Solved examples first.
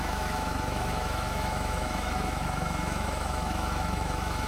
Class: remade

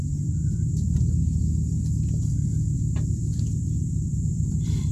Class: remade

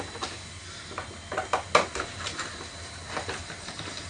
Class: recorded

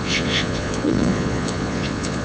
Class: remade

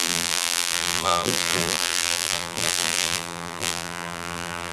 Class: remade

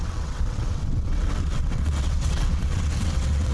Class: remade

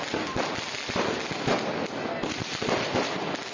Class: recorded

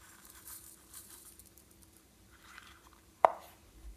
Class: remade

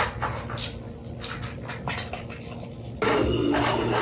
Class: recorded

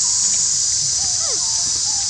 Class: recorded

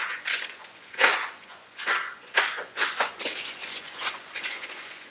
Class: remade